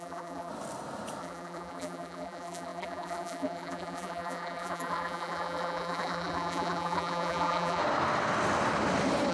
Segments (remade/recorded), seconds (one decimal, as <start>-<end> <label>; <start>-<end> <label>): 0.0-0.5 remade; 0.5-1.2 recorded; 1.2-7.8 remade; 7.8-9.3 recorded